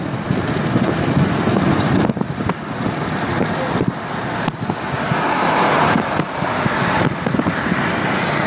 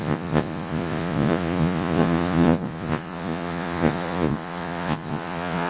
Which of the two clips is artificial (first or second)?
second